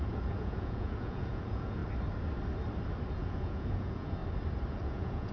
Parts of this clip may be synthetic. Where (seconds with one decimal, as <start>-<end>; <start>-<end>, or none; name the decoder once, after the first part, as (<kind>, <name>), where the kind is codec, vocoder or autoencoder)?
0.0-1.8 (vocoder, Vocos); 3.2-4.2; 4.7-5.3